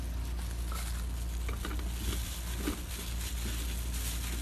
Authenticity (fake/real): real